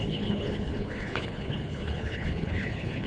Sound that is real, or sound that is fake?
fake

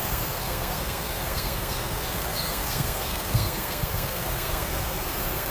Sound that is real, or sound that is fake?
fake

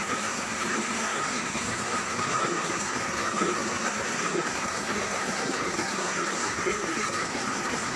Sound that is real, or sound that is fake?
fake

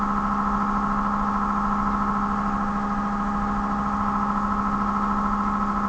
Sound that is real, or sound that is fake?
real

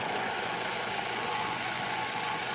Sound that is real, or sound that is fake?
fake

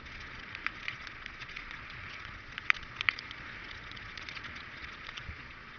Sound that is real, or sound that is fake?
fake